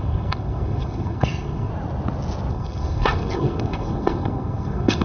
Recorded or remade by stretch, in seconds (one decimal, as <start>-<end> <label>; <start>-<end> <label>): 0.0-1.7 remade; 1.7-2.5 recorded; 2.5-5.0 remade